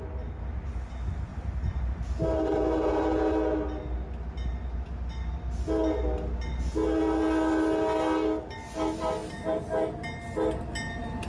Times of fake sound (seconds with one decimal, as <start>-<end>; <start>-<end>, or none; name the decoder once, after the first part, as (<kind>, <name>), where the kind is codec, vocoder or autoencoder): 1.3-3.0 (vocoder, BigVGAN v2)